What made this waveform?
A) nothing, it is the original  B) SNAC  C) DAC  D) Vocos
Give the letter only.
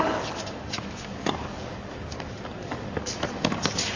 C